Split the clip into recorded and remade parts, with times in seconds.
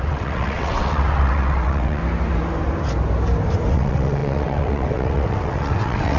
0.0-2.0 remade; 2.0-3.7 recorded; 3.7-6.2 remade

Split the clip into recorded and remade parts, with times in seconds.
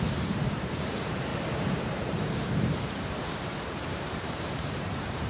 0.0-5.3 remade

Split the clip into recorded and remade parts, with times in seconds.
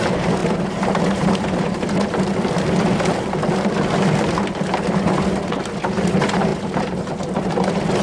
0.0-2.3 remade; 2.3-5.1 recorded; 5.1-8.0 remade